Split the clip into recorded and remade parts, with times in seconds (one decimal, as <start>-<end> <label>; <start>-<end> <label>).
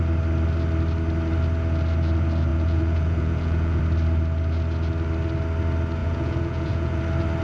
0.0-2.5 recorded; 2.5-3.8 remade; 3.8-6.0 recorded; 6.0-7.0 remade; 7.0-7.4 recorded